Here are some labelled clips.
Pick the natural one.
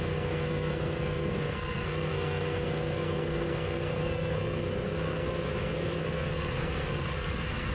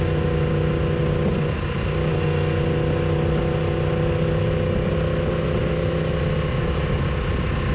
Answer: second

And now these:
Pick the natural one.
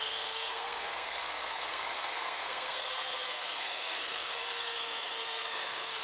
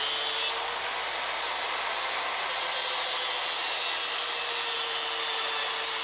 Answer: second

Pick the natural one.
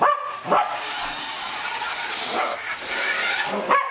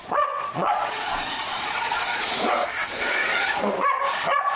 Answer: first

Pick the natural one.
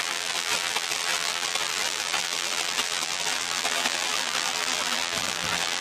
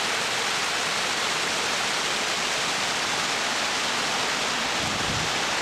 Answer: second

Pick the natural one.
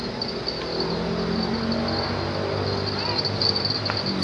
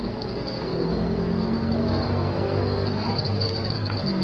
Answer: first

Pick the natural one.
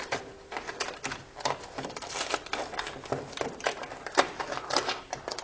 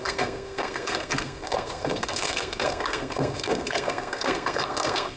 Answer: first